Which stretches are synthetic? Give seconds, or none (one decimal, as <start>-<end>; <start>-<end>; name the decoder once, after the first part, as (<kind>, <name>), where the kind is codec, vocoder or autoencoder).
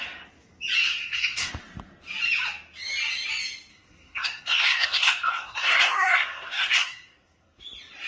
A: 0.8-1.5 (codec, SNAC); 3.7-7.6